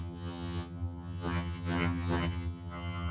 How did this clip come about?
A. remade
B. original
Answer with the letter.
A